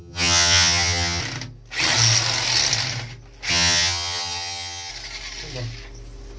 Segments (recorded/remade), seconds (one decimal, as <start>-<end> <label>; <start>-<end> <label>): 0.0-1.2 remade; 1.2-3.5 recorded; 3.5-4.9 remade; 4.9-6.4 recorded